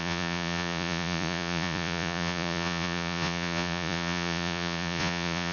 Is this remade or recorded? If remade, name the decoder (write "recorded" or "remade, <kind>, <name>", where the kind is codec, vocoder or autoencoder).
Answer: remade, vocoder, Vocos